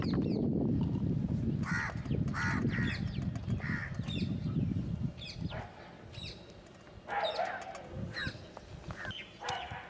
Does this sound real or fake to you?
real